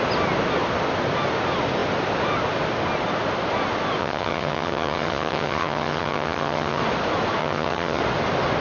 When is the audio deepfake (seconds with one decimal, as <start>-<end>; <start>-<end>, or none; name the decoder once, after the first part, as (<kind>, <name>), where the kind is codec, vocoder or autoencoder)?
4.0-6.8 (vocoder, HiFi-GAN); 7.4-8.0